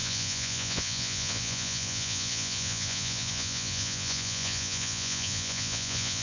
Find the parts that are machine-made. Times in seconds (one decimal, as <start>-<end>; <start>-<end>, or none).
0.0-6.2